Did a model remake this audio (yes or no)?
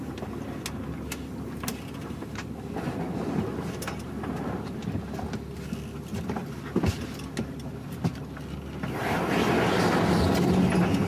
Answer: no